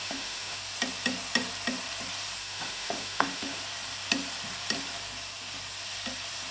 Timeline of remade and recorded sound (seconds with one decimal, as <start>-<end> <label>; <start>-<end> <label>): 0.0-0.6 remade; 0.6-2.4 recorded; 2.4-3.6 remade; 3.6-6.5 recorded